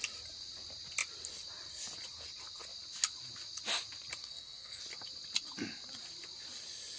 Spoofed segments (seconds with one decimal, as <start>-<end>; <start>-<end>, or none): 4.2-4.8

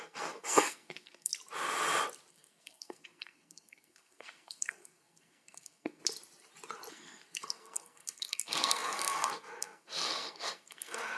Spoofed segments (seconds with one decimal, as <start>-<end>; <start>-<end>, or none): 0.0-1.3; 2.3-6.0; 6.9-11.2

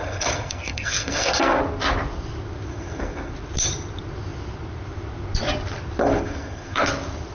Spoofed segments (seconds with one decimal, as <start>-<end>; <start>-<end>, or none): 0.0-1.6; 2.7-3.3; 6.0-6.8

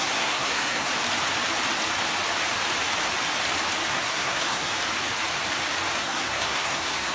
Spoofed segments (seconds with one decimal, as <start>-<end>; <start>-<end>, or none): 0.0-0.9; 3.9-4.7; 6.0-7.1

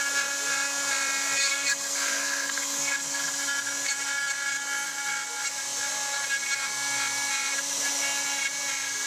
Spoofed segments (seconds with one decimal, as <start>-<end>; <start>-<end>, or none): 1.5-3.3